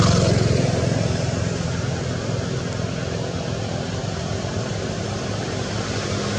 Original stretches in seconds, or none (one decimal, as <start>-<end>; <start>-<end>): 0.0-4.0; 5.9-6.4